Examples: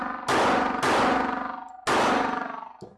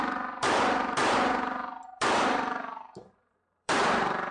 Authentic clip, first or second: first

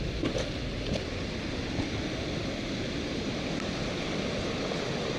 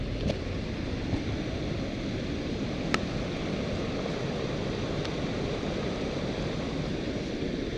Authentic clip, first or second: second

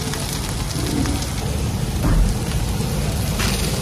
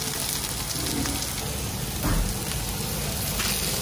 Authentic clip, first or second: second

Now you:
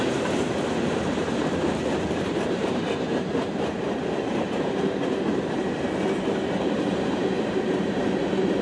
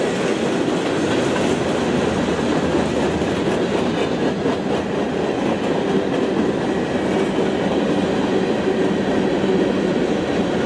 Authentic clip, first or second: second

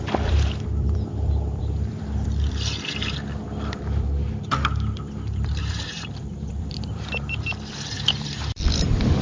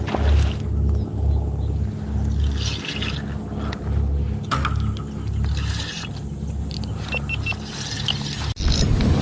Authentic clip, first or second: second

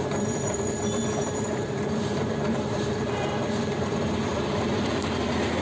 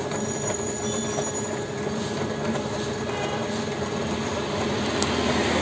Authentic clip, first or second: second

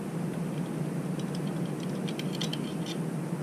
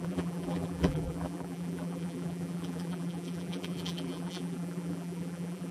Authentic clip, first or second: first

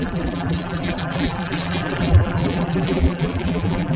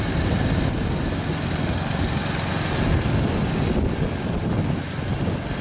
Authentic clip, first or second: second